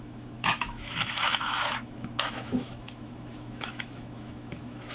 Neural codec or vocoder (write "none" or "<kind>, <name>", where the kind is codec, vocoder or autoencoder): autoencoder, DAC-VAE